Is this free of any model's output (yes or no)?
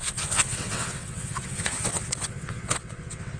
no